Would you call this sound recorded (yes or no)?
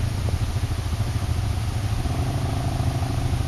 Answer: yes